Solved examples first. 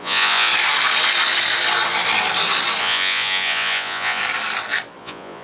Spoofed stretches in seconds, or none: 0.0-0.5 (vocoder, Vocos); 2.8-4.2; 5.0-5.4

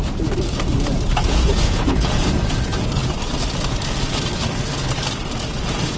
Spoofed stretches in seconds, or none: 1.2-2.3 (vocoder, Vocos)

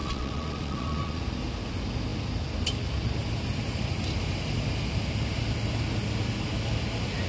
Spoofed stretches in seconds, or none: 0.0-1.2 (vocoder, Vocos)

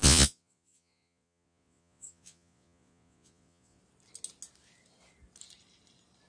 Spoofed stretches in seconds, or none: 0.0-3.8 (vocoder, Vocos)

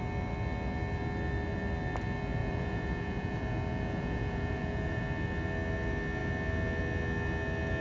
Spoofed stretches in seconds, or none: 2.4-5.0 (vocoder, Vocos)

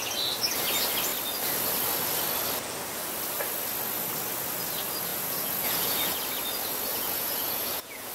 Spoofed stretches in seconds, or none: 5.1-6.2 (vocoder, Vocos); 6.9-8.1